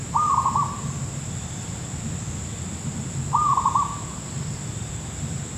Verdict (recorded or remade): recorded